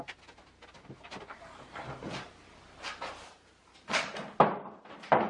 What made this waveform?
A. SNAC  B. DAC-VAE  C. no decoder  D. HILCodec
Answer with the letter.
C